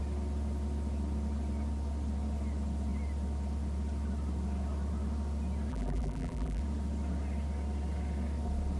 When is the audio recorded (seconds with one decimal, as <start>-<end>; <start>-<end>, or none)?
0.0-5.7; 6.6-8.8